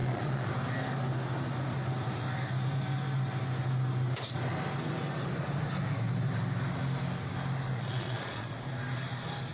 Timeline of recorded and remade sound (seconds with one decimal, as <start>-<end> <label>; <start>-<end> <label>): 0.0-0.5 remade; 0.5-7.7 recorded; 7.7-8.5 remade; 8.5-9.5 recorded